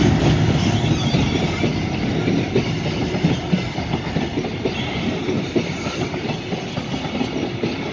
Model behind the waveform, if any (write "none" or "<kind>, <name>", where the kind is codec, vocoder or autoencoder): none